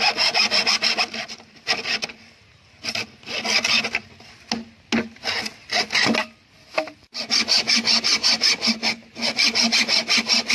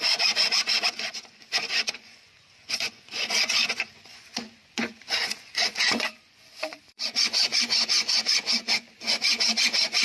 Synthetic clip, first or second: second